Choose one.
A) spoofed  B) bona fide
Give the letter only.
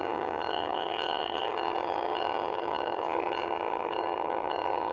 A